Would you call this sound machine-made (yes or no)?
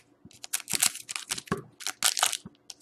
no